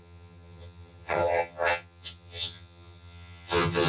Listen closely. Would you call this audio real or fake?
fake